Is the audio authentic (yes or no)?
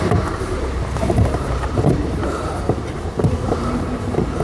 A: no